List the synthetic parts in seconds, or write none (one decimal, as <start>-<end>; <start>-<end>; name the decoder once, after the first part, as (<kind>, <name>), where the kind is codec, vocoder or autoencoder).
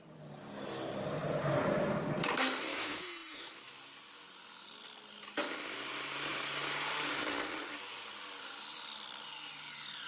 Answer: 2.7-3.7 (autoencoder, DAC-VAE)